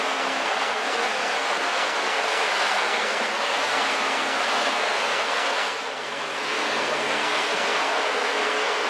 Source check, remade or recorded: remade